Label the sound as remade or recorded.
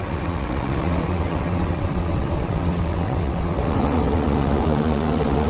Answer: remade